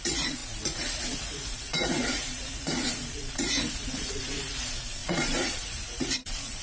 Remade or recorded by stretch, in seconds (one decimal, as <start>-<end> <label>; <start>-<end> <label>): 0.0-6.6 remade